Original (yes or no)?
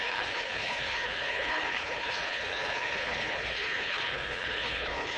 no